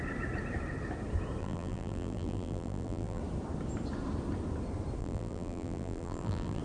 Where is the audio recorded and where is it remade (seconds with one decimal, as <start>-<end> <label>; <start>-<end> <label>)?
0.0-1.4 recorded; 1.4-3.2 remade; 3.2-5.0 recorded; 5.0-6.6 remade

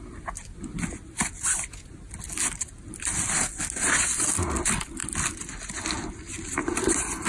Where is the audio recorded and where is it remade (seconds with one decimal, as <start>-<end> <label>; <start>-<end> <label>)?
0.0-6.6 recorded; 6.6-7.3 remade